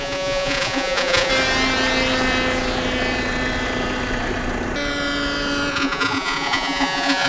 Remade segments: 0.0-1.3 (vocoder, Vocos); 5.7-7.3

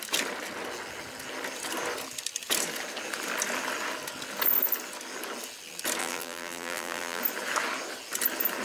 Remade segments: 6.0-7.2 (vocoder, BigVGAN v2)